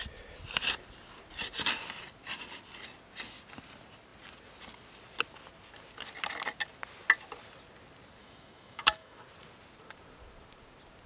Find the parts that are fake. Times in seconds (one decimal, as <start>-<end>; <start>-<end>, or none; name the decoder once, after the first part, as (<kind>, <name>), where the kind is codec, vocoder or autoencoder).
8.2-9.2 (autoencoder, DAC-VAE)